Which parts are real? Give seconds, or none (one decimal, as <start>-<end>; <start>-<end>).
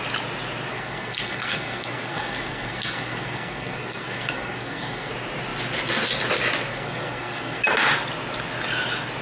0.0-0.7; 5.1-6.7; 7.6-9.2